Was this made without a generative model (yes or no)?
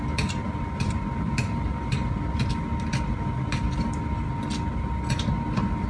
yes